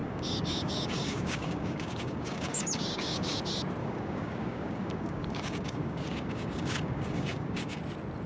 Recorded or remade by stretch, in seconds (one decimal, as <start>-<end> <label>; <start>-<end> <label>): 0.0-3.4 remade; 3.4-3.8 recorded; 3.8-7.8 remade; 7.8-8.3 recorded